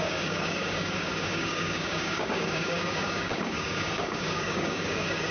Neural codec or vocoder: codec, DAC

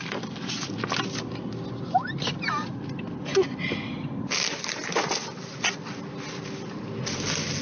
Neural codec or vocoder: none